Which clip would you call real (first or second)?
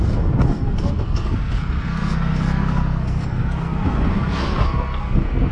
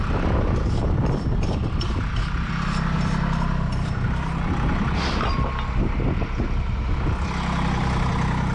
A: second